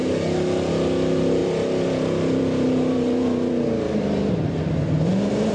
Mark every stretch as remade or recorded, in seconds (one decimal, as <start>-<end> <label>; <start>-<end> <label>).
0.0-1.4 recorded; 1.4-4.7 remade; 4.7-5.5 recorded